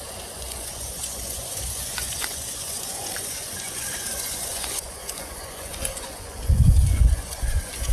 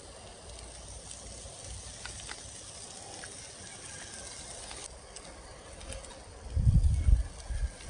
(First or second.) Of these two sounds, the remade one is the first